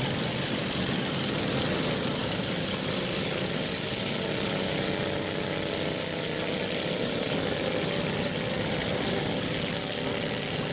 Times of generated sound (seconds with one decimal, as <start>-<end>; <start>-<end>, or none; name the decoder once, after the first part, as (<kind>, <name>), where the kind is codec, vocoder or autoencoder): none